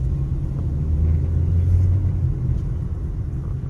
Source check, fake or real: real